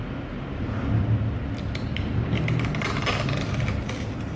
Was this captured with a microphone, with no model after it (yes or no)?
yes